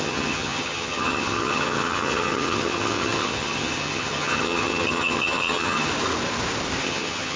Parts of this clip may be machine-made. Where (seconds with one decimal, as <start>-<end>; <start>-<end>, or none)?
0.0-5.9; 6.8-7.4